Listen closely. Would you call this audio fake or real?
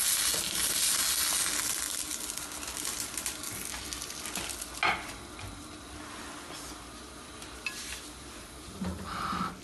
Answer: real